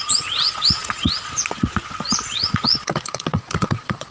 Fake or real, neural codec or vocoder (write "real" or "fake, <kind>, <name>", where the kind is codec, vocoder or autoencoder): fake, vocoder, Vocos